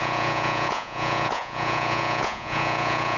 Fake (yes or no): yes